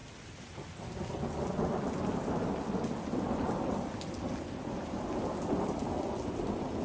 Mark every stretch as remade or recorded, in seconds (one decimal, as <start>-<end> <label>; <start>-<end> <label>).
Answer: 0.0-6.8 recorded